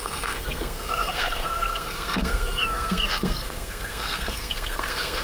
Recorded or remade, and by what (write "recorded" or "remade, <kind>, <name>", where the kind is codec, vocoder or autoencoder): remade, codec, SNAC